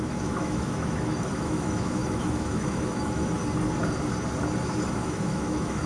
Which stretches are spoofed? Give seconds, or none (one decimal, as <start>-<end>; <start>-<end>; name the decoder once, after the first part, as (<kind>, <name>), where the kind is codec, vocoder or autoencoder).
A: 0.0-3.4 (autoencoder, DAC-VAE); 4.9-5.9